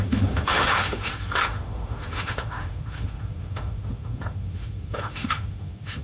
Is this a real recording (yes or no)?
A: no